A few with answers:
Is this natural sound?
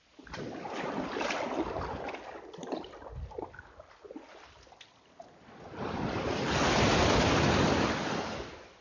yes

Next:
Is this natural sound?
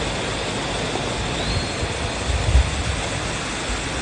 yes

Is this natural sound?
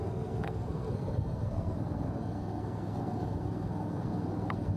no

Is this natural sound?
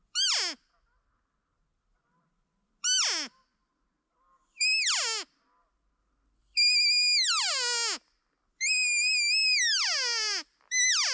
yes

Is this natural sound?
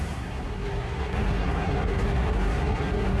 no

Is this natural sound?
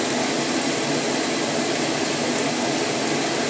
yes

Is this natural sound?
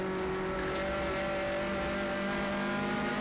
yes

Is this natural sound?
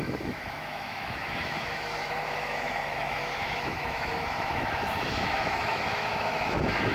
no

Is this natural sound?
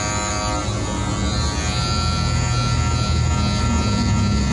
yes